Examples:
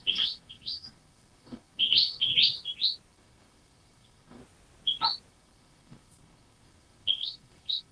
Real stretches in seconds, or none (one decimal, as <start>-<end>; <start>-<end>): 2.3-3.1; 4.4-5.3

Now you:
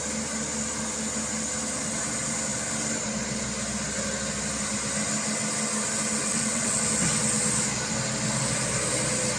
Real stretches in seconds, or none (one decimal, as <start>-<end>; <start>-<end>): 0.0-6.2; 6.8-9.4

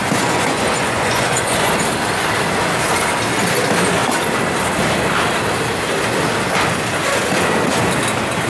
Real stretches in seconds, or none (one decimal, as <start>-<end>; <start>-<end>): 1.7-8.5

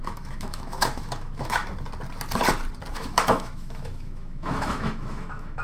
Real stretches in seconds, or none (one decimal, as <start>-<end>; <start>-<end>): 1.6-2.9

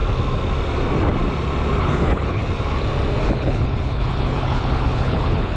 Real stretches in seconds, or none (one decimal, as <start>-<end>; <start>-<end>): 0.0-1.8; 2.4-3.2

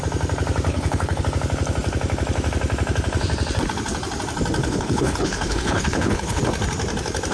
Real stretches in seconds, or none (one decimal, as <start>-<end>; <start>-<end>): 0.0-0.7; 1.2-4.6; 6.4-7.3